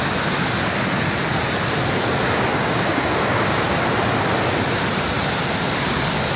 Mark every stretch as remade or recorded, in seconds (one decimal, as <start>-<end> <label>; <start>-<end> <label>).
0.0-2.5 recorded; 2.5-3.8 remade; 3.8-6.4 recorded